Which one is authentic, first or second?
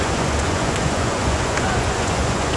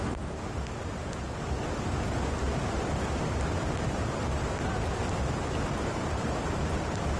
second